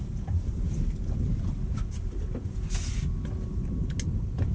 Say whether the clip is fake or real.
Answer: real